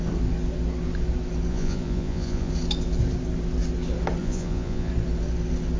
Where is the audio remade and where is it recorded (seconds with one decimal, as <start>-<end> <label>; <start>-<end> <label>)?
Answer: 0.0-1.5 recorded; 1.5-2.5 remade; 2.5-4.2 recorded; 4.2-4.9 remade; 4.9-5.8 recorded